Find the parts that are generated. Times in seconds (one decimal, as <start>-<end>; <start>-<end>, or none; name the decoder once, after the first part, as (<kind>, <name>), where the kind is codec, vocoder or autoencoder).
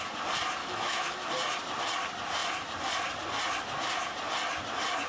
0.6-1.3 (autoencoder, DAC-VAE)